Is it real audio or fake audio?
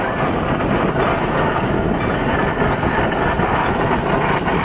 real